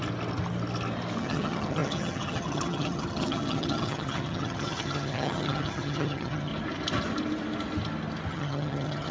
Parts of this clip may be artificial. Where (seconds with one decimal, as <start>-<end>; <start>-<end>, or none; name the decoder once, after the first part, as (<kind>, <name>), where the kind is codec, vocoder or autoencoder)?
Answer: 1.2-6.5 (vocoder, HiFi-GAN); 8.3-9.1